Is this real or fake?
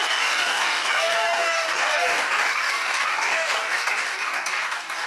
fake